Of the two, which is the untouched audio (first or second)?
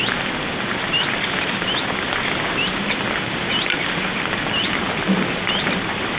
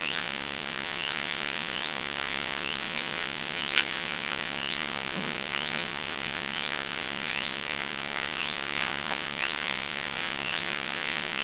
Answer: first